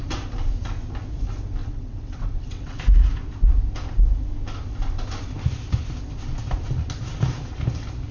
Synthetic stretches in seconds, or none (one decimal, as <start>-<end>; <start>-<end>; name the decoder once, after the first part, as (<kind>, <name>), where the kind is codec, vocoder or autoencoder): 1.6-2.8 (vocoder, WaveNeXt)